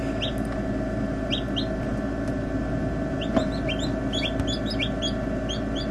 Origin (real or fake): real